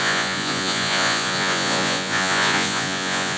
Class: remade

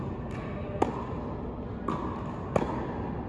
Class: recorded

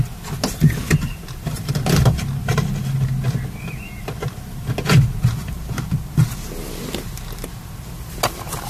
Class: recorded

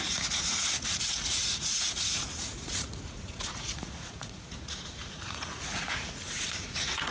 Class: remade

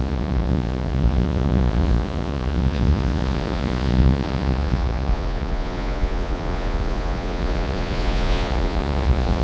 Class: remade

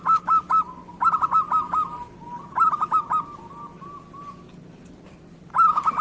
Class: recorded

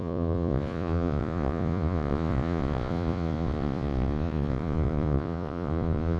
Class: remade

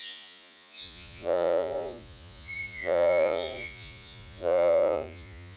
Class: remade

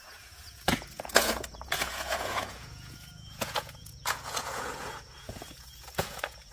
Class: remade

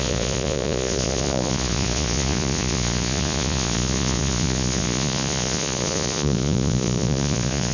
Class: remade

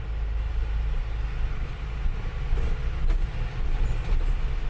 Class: recorded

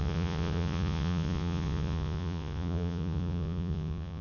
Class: remade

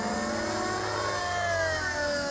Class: recorded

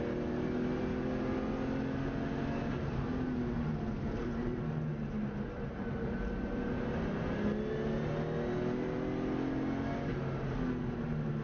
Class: recorded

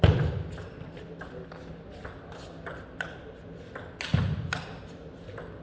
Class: recorded